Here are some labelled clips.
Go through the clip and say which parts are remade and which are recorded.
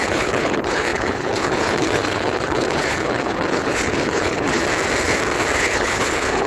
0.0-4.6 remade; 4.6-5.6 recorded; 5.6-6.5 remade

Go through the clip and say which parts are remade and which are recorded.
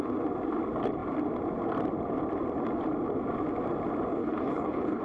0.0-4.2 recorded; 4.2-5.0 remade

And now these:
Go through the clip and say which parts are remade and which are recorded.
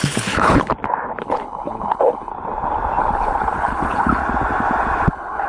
0.0-0.7 remade; 0.7-1.2 recorded; 1.2-2.3 remade; 2.3-3.0 recorded; 3.0-4.2 remade; 4.2-5.1 recorded; 5.1-5.5 remade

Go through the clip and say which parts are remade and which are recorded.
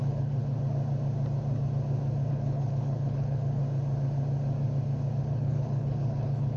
0.0-0.4 remade; 0.4-2.3 recorded; 2.3-3.6 remade; 3.6-5.2 recorded; 5.2-6.6 remade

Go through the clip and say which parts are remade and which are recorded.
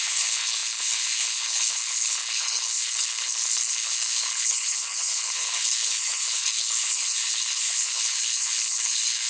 0.0-9.3 remade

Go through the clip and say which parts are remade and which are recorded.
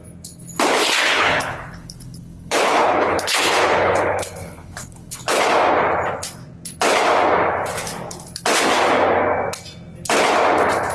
0.0-0.8 recorded; 0.8-5.4 remade; 5.4-10.9 recorded